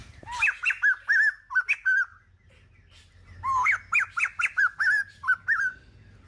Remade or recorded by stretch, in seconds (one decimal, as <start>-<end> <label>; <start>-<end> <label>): 0.0-5.2 recorded; 5.2-6.3 remade